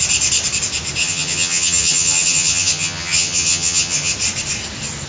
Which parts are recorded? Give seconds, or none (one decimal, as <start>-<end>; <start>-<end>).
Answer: 0.0-1.0; 4.1-5.1